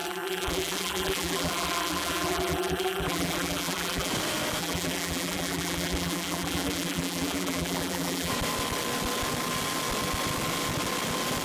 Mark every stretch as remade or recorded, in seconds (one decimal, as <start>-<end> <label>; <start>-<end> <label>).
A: 0.0-4.1 remade; 4.1-4.6 recorded; 4.6-8.3 remade; 8.3-11.4 recorded